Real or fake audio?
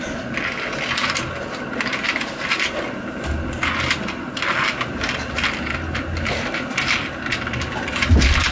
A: real